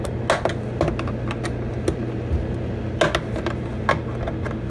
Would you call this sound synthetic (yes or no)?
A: no